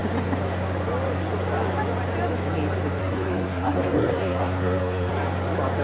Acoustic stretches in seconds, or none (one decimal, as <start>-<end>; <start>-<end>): 0.0-3.0; 5.1-5.8